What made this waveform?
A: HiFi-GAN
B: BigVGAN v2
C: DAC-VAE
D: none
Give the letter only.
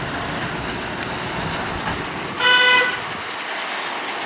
D